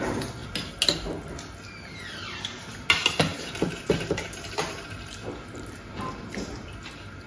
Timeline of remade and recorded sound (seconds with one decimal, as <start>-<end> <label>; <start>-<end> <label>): 0.0-0.4 remade; 0.4-1.7 recorded; 1.7-7.3 remade